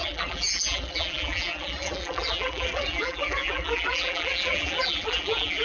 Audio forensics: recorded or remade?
remade